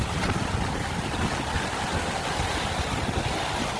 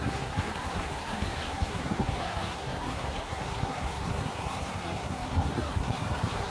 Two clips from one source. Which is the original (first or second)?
first